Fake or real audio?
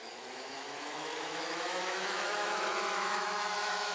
fake